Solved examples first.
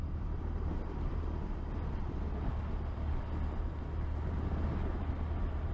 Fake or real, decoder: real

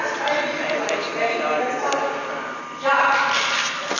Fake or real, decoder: real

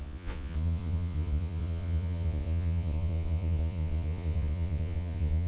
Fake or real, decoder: fake, vocoder, Vocos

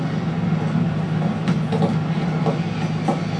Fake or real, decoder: real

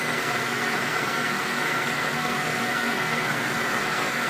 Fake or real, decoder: fake, codec, SNAC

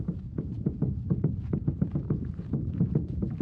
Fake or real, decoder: fake, vocoder, BigVGAN v2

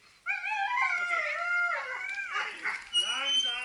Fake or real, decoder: real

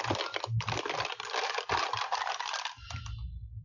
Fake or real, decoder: real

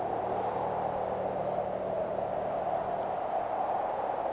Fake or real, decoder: real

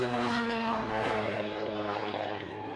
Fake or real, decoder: fake, codec, SNAC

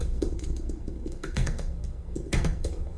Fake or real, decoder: fake, codec, SNAC